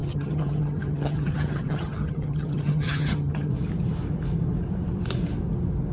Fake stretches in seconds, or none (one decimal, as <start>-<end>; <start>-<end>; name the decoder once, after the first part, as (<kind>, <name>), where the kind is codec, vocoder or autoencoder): 0.0-3.5 (vocoder, HiFi-GAN)